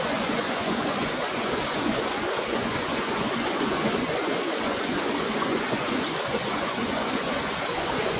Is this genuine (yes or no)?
no